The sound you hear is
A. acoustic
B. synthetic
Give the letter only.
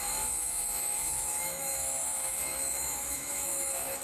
B